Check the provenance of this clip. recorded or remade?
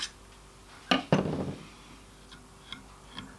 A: recorded